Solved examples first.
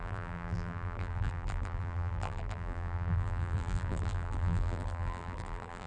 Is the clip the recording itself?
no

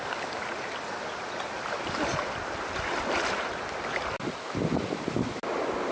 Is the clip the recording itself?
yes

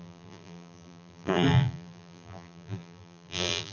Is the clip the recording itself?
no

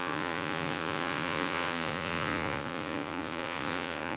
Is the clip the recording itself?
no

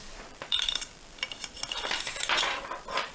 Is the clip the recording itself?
no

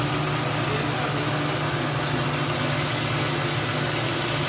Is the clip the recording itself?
yes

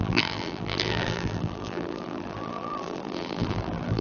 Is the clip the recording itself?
no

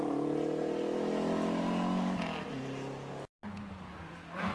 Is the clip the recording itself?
yes